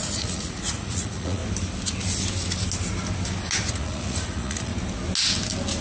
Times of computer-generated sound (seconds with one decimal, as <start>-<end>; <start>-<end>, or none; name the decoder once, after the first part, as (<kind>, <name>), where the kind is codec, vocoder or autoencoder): 0.0-1.4 (vocoder, Vocos); 3.7-4.7